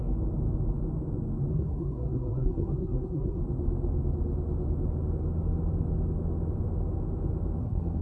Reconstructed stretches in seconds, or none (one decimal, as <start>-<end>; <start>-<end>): 1.5-3.4; 7.6-8.0